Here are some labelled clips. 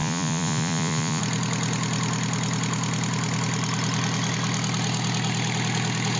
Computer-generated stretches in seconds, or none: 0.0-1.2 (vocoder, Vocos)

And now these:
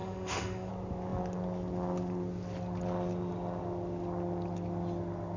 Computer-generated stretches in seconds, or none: 0.0-0.7 (autoencoder, DAC-VAE)

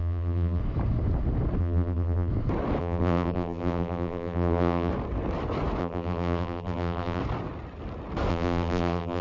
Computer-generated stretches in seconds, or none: 0.0-0.6 (vocoder, BigVGAN v2); 1.6-2.3; 2.8-4.9; 5.8-7.2; 8.3-9.2

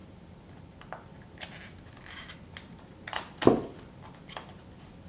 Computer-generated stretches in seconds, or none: none

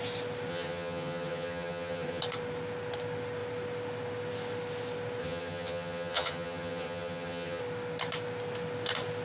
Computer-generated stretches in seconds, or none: 0.5-2.2 (vocoder, HiFi-GAN); 5.2-7.6

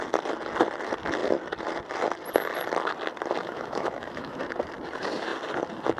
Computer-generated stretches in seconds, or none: 3.4-4.4 (autoencoder, DAC-VAE)